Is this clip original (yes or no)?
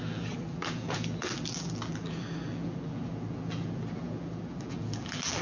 no